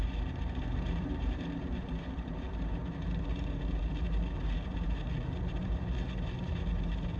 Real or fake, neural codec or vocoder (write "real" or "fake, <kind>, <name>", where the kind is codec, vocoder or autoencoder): fake, vocoder, BigVGAN v2